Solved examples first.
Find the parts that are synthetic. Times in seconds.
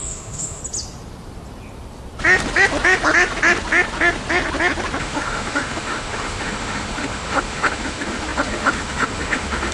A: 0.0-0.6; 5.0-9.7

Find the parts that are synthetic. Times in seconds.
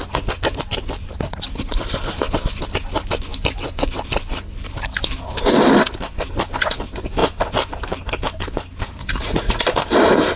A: 9.0-9.6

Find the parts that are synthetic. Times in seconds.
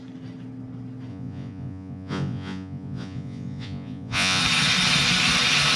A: 1.1-4.4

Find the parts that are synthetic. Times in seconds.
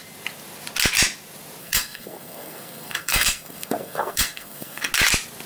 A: 1.6-4.9